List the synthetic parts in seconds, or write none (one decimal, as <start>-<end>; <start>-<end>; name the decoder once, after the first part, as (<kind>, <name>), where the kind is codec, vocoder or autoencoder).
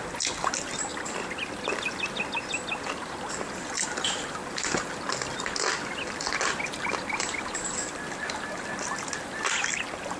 none